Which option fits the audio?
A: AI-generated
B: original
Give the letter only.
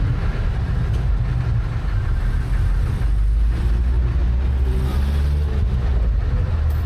B